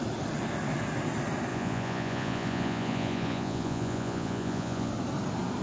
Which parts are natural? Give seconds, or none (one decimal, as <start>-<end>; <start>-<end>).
0.0-1.5; 4.9-5.6